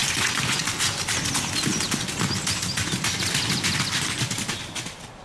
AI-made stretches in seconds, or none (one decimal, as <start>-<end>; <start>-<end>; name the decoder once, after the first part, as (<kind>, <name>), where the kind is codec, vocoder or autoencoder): 0.0-0.6 (vocoder, Vocos)